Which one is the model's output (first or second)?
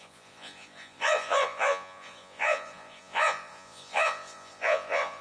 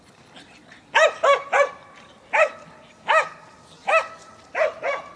first